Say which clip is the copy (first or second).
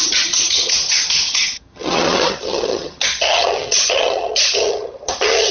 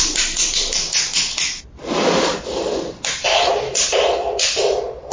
first